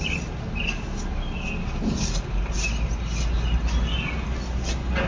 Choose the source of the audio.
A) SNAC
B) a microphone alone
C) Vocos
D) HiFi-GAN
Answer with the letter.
B